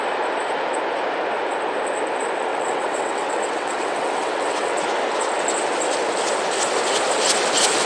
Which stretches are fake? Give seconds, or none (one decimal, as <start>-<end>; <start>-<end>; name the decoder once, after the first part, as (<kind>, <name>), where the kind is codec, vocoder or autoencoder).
2.5-4.8 (vocoder, WaveNeXt)

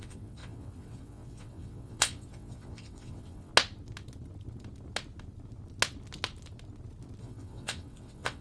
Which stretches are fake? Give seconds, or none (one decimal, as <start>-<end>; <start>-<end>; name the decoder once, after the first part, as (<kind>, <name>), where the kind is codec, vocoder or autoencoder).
0.0-3.5 (vocoder, WaveNeXt); 7.2-8.4

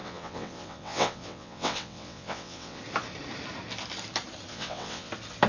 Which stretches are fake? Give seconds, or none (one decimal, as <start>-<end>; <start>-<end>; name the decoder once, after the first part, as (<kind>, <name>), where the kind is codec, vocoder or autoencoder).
0.0-2.8 (vocoder, WaveNeXt); 4.5-5.1

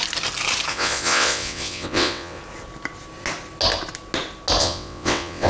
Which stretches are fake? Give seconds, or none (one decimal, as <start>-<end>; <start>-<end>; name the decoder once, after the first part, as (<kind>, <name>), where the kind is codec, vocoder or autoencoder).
0.7-2.4 (vocoder, WaveNeXt); 4.6-5.5

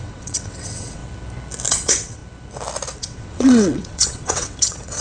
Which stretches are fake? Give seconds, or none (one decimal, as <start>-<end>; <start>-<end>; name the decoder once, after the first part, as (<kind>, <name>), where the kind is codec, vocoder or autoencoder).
0.0-1.0 (vocoder, WaveNeXt); 1.7-2.2; 3.0-5.0

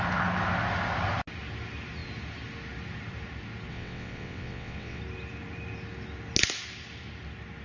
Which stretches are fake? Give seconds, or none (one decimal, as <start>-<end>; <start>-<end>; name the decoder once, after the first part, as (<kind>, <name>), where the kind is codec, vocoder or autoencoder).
3.7-5.0 (vocoder, WaveNeXt)